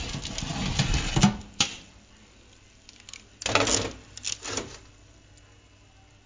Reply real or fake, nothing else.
real